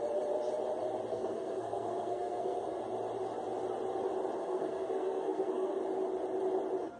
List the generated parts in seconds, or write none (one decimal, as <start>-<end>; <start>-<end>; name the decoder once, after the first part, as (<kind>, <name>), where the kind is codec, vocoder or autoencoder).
1.1-2.8 (codec, SNAC); 4.4-5.8